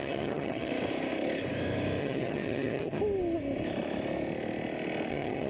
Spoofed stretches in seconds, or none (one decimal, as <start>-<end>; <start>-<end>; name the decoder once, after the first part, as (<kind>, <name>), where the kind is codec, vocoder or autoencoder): 0.0-0.7 (vocoder, HiFi-GAN); 2.0-3.0; 5.1-5.5